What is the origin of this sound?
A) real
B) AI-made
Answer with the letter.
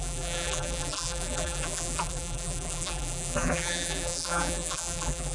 B